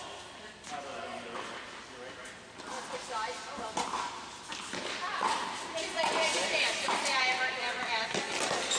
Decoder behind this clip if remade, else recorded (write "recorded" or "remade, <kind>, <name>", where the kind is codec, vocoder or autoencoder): recorded